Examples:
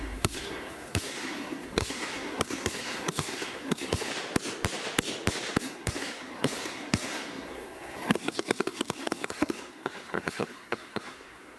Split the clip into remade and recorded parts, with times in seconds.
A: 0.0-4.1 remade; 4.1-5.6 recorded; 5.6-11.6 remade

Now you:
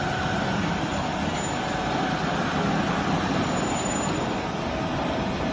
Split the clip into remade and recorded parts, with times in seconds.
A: 0.0-5.5 recorded